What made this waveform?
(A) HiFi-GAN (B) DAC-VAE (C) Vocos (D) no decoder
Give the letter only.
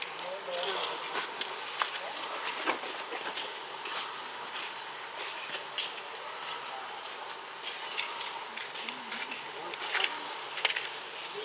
D